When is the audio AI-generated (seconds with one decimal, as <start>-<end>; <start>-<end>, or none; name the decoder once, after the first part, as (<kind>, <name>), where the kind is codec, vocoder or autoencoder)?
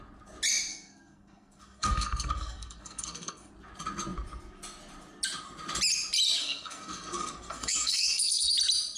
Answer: 0.7-3.5 (codec, SNAC); 6.4-8.5